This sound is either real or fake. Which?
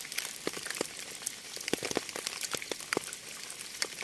real